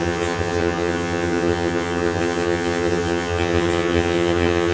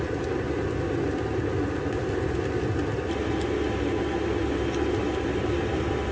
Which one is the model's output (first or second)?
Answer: first